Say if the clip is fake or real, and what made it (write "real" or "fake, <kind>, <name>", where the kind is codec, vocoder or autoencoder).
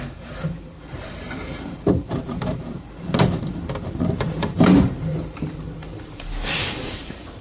fake, vocoder, BigVGAN v2